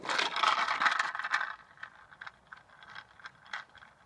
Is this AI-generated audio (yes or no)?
no